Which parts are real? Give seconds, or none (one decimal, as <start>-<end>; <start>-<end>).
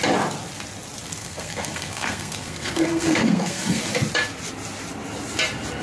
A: 0.0-1.2; 3.8-5.8